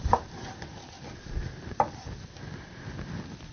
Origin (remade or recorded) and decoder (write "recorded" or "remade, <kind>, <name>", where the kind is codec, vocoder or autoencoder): recorded